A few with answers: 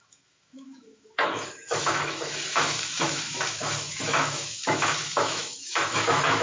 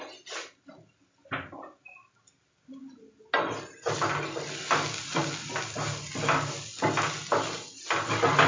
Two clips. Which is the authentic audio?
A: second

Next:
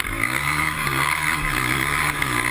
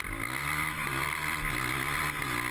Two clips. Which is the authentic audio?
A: second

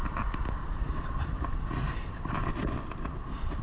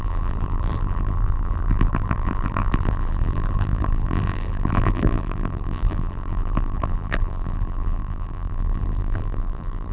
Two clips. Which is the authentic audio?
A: first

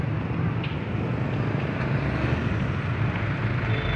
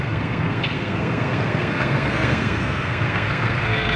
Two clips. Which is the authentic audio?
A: first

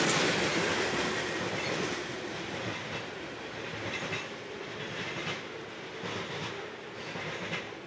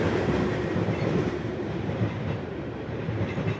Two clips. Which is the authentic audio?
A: first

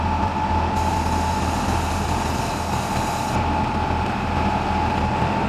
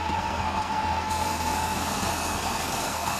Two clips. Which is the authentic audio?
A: first